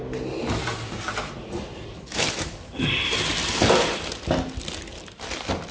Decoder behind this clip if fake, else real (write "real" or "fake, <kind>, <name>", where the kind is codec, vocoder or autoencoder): real